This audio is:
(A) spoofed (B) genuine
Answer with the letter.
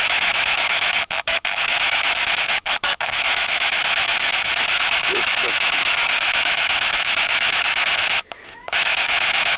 A